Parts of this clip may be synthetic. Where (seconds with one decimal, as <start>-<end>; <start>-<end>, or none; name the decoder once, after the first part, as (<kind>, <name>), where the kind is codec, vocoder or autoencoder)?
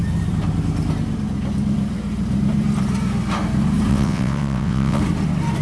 3.9-5.0 (vocoder, WaveNeXt)